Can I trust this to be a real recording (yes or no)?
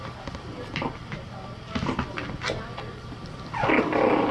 yes